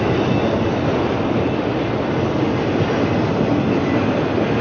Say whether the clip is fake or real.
real